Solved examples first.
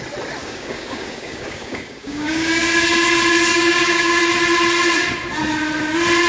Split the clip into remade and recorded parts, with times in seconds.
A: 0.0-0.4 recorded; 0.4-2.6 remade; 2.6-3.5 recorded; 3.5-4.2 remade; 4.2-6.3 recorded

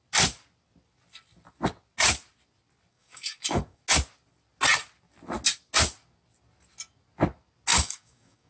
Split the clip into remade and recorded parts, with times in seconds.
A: 0.0-2.9 recorded; 2.9-3.8 remade; 3.8-7.7 recorded; 7.7-8.5 remade

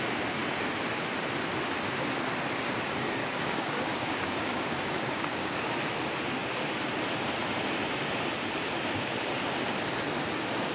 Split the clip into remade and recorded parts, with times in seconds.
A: 0.0-3.2 recorded; 3.2-5.7 remade; 5.7-10.7 recorded

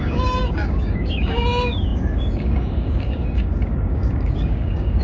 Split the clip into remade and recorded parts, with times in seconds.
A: 0.0-5.0 remade

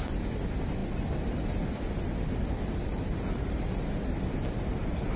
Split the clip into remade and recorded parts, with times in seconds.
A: 0.0-5.2 recorded